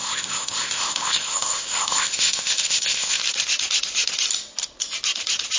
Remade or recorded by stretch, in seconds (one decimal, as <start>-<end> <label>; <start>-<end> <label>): 0.0-3.2 remade; 3.2-5.6 recorded